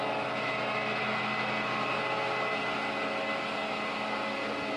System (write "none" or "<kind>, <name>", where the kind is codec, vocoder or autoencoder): none